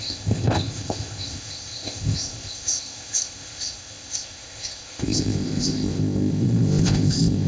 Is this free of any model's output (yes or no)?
no